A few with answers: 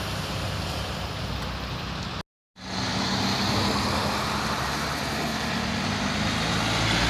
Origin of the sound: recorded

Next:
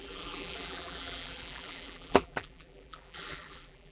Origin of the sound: remade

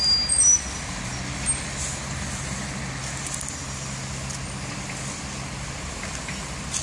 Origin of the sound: recorded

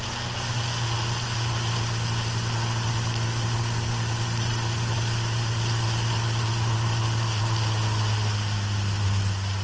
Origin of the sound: recorded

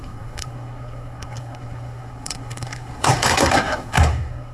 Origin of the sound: remade